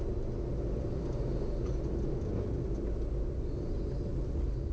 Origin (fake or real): real